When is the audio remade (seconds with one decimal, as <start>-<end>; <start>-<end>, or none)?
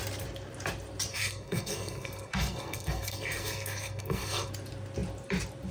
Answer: 1.1-4.5